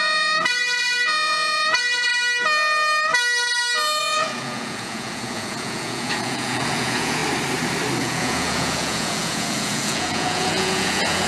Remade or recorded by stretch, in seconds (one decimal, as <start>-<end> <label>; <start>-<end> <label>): 0.0-2.1 remade; 2.1-4.0 recorded; 4.0-7.2 remade; 7.2-8.0 recorded; 8.0-11.3 remade